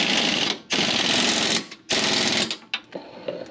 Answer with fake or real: real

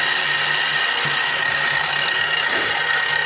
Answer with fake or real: real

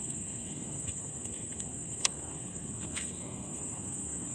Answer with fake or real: fake